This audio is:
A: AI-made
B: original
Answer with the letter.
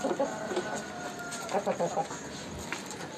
B